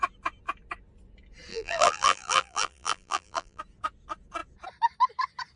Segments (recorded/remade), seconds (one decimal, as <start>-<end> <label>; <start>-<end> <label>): 0.0-1.5 recorded; 1.5-3.6 remade; 3.6-5.6 recorded